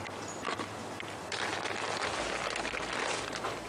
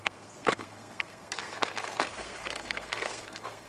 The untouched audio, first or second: first